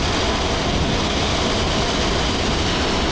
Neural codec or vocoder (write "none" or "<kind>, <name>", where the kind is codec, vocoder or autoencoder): none